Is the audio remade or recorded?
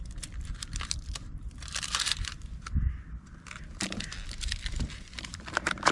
remade